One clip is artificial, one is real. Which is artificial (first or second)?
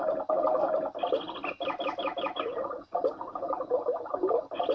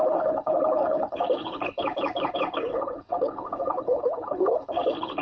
second